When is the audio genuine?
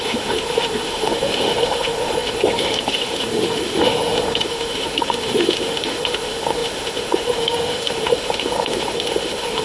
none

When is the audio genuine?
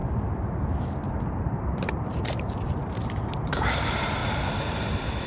0.0-1.1; 4.2-5.3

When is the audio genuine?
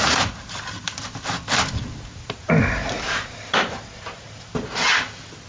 0.0-2.1; 4.4-5.5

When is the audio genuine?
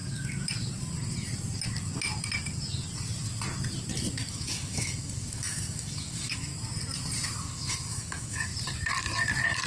0.0-4.3; 6.5-7.4; 8.5-9.7